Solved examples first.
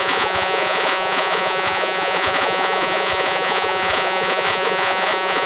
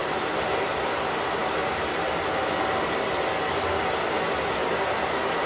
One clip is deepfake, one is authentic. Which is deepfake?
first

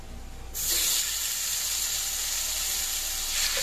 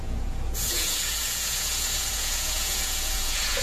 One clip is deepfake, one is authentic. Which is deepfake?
second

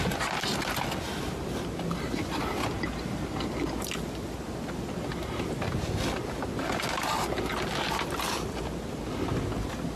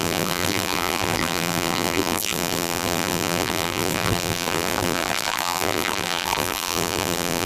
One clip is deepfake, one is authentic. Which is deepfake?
second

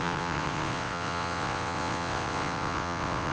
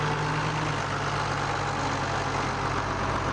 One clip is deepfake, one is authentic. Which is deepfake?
first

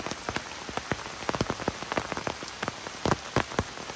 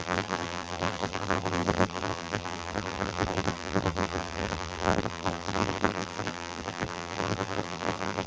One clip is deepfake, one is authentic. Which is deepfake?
second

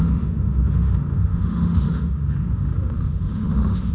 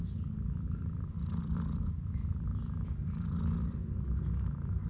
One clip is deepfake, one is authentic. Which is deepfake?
first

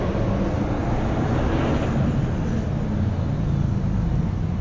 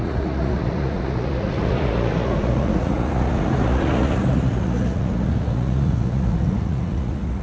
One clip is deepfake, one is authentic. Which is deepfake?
second